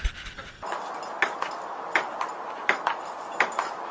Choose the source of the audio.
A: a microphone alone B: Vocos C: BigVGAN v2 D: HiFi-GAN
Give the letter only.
A